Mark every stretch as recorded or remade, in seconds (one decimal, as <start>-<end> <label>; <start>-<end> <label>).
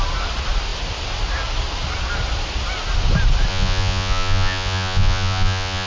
0.0-3.5 recorded; 3.5-5.9 remade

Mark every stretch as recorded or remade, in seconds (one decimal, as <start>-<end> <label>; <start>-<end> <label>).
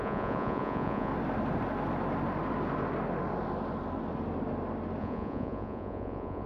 0.0-1.1 remade; 1.1-5.0 recorded; 5.0-6.5 remade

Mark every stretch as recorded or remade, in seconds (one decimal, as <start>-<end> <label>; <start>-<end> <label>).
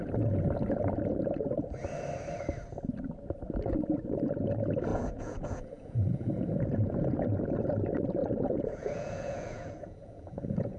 0.0-4.9 recorded; 4.9-6.9 remade; 6.9-8.2 recorded; 8.2-10.8 remade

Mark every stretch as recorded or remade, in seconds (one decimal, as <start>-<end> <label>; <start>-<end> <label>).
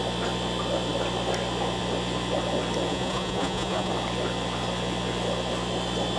0.0-2.9 recorded; 2.9-3.9 remade; 3.9-6.2 recorded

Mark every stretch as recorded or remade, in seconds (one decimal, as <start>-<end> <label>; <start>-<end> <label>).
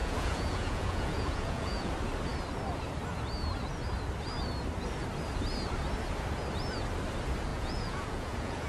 0.0-1.9 remade; 1.9-7.5 recorded; 7.5-8.7 remade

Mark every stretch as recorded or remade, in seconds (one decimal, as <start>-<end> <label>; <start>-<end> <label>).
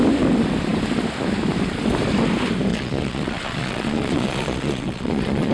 0.0-2.7 recorded; 2.7-5.5 remade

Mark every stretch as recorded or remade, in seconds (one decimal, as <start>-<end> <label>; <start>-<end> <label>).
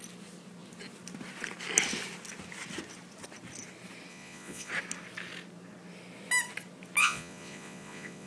0.0-4.1 recorded; 4.1-4.7 remade; 4.7-7.0 recorded; 7.0-8.3 remade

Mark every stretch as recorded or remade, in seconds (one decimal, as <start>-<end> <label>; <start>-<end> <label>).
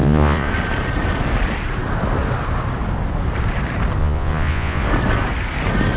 0.0-0.5 remade; 0.5-4.0 recorded; 4.0-4.8 remade; 4.8-6.0 recorded